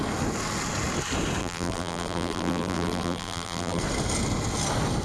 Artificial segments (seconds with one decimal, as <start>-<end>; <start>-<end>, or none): 1.4-3.8